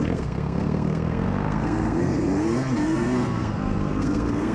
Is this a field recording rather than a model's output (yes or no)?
no